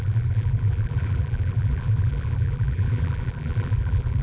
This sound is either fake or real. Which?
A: fake